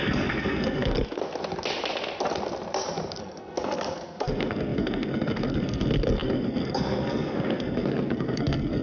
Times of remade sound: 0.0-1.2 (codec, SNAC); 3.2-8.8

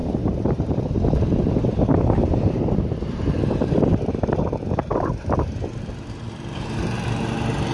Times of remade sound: none